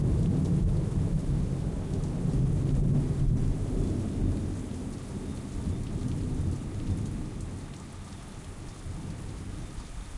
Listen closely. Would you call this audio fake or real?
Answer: real